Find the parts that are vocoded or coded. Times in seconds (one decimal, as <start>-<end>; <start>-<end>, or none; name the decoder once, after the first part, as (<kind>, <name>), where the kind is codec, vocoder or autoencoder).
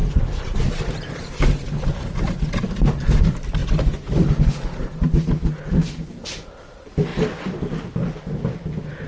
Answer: 0.0-1.2 (vocoder, BigVGAN v2); 7.1-7.8